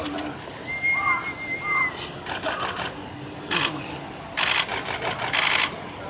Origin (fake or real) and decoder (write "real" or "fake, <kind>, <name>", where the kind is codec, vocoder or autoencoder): real